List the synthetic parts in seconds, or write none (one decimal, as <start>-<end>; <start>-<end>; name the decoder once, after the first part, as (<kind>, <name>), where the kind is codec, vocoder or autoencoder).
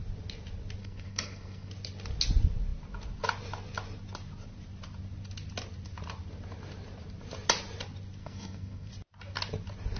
0.8-1.7 (codec, SNAC); 8.2-8.9